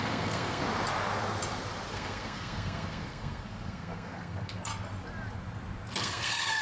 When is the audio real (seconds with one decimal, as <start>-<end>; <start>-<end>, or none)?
0.6-1.9; 4.7-6.0